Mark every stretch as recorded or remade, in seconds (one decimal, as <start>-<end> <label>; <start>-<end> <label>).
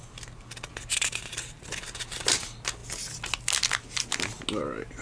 0.0-0.9 recorded; 0.9-1.6 remade; 1.6-5.0 recorded